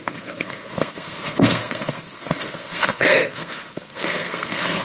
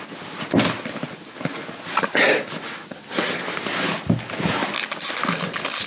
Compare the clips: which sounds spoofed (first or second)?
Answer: first